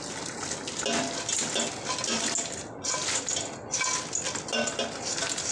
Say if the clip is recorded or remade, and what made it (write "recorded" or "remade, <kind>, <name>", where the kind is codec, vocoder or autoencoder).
recorded